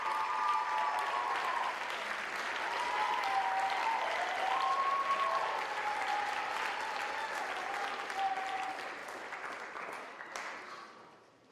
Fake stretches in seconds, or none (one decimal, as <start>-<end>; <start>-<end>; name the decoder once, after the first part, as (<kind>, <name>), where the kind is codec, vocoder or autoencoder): none